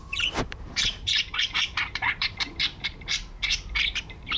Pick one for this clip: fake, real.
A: fake